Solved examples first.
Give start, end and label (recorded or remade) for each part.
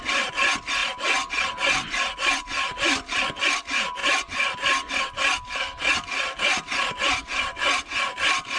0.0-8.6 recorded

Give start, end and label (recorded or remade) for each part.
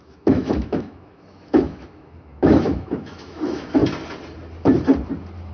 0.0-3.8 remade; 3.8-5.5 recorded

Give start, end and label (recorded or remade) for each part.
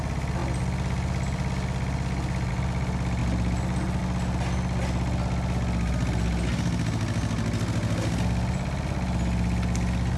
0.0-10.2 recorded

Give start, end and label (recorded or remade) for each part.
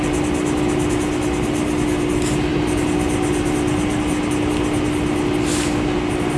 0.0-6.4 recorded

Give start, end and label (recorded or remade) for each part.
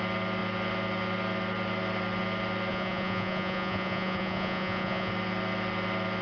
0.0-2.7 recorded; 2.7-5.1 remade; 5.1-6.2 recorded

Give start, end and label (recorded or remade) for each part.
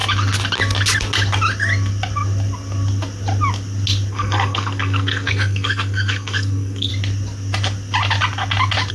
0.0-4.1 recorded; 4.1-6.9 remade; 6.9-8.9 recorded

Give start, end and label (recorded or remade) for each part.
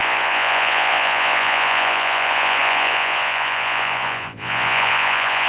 0.0-5.5 remade